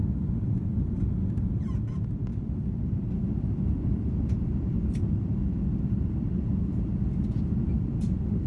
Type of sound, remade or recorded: recorded